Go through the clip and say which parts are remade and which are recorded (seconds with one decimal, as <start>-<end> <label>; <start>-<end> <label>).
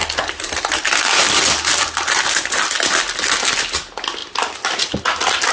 0.0-5.5 recorded